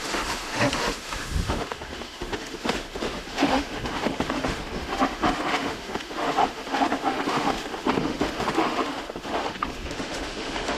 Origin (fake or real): fake